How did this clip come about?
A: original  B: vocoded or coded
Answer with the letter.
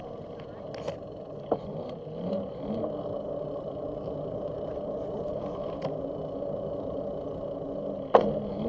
A